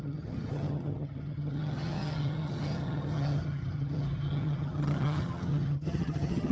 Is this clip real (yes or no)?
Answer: no